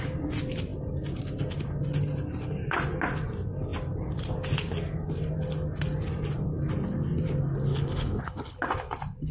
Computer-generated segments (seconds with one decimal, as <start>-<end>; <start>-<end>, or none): 7.7-8.6